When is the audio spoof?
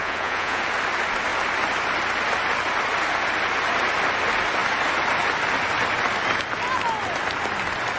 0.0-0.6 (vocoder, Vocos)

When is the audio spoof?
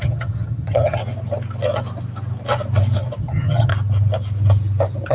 0.0-1.0 (vocoder, HiFi-GAN); 3.2-3.7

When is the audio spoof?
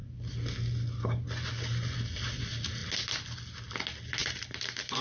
4.2-5.0 (vocoder, BigVGAN v2)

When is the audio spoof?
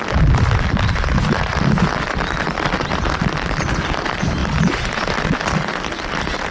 none